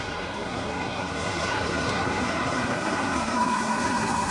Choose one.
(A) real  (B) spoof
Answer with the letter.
B